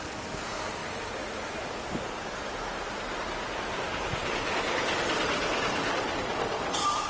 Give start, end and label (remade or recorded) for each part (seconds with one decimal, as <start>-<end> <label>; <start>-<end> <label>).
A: 0.0-0.8 recorded; 0.8-2.3 remade; 2.3-2.7 recorded; 2.7-7.1 remade